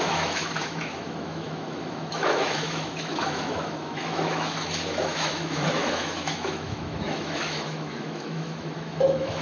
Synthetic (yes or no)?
yes